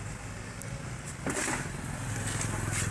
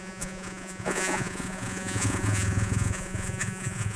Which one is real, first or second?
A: first